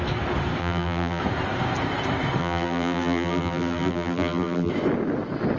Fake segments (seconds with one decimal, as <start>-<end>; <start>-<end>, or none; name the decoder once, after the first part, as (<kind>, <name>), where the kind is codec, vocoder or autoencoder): 0.6-1.2 (vocoder, BigVGAN v2); 2.4-4.7